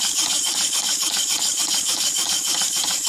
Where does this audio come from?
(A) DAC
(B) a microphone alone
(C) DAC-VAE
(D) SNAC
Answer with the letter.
A